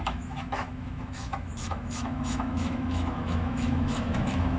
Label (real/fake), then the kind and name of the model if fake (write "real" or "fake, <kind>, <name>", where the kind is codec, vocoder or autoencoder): fake, autoencoder, DAC-VAE